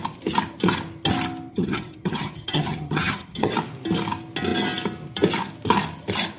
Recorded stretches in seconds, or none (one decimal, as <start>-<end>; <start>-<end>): 0.0-1.5; 3.5-6.4

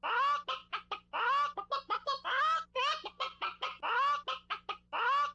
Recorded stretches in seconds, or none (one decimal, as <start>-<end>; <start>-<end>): 0.0-5.3

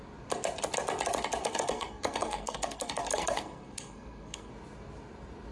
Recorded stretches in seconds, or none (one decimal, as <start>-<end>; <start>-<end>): 0.0-1.4; 4.5-5.5

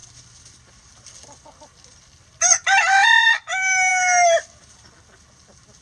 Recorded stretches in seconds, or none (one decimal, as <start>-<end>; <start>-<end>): 0.0-5.8

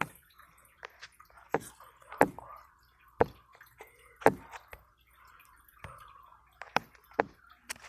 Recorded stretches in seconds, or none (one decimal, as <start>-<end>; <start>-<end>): 3.5-5.3; 6.3-7.2

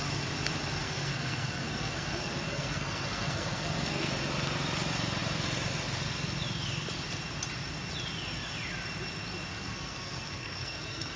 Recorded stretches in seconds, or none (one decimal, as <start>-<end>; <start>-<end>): 0.0-0.8; 4.1-9.5

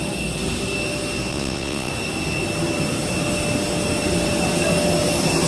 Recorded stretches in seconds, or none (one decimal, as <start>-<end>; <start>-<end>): 0.0-1.3; 1.9-5.5